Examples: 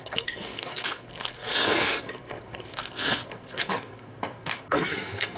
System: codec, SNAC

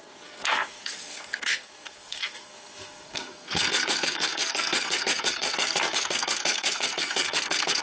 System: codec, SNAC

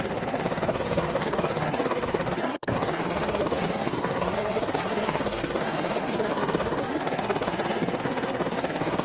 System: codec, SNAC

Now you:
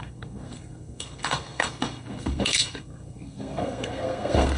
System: codec, SNAC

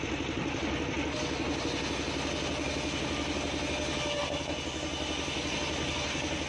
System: none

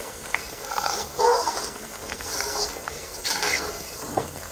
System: codec, SNAC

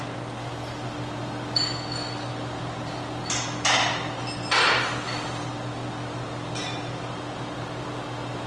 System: none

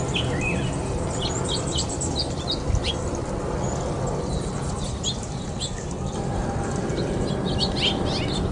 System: none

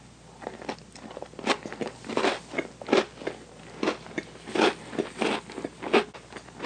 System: none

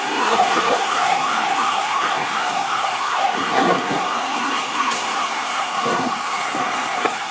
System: codec, SNAC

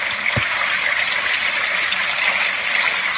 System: none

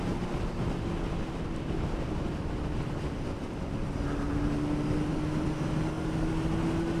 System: none